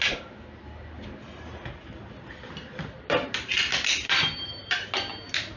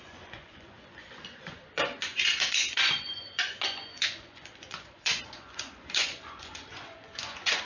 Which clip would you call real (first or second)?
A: first